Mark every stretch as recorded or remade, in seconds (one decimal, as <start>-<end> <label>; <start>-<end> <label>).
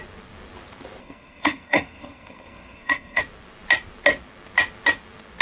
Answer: 0.0-1.0 recorded; 1.0-3.2 remade; 3.2-5.4 recorded